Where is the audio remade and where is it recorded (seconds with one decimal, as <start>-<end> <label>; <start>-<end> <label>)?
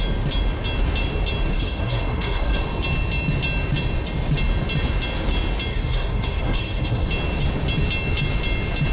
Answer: 0.0-1.5 recorded; 1.5-2.6 remade; 2.6-5.7 recorded; 5.7-7.1 remade; 7.1-8.9 recorded